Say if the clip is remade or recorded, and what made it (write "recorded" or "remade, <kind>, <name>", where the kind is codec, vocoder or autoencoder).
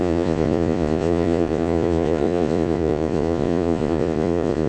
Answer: remade, vocoder, Vocos